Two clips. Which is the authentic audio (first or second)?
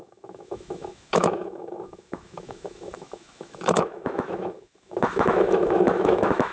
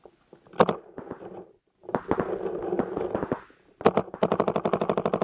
second